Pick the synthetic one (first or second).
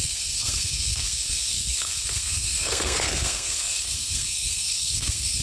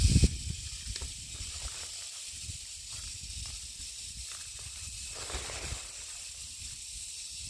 first